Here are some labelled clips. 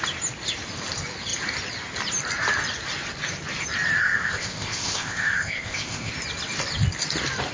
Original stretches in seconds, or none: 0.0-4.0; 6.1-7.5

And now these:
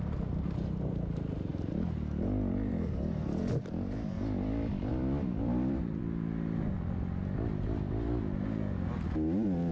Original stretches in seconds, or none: 0.0-1.5; 3.4-4.9; 6.0-9.7

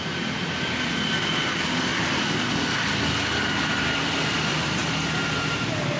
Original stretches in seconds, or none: 1.9-3.4; 4.8-6.0

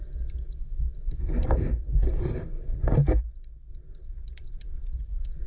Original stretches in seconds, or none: 2.5-3.7